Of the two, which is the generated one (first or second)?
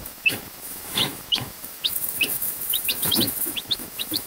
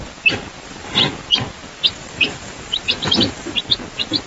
first